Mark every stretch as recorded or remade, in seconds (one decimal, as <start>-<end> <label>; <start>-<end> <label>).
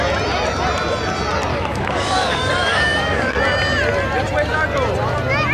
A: 0.0-1.5 recorded; 1.5-3.4 remade; 3.4-5.5 recorded